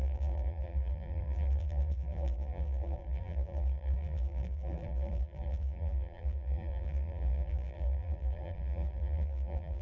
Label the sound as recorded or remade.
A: remade